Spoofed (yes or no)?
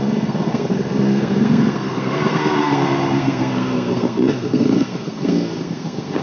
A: yes